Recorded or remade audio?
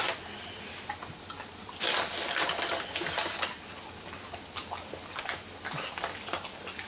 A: recorded